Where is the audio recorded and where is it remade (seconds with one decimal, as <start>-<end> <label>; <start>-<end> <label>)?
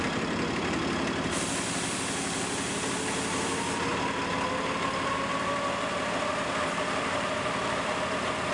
0.0-3.9 remade; 3.9-5.3 recorded; 5.3-8.5 remade